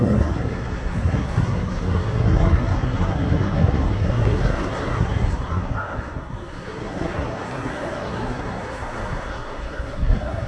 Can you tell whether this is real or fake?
fake